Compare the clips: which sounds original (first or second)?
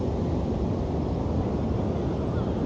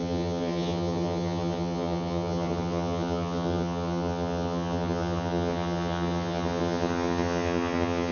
first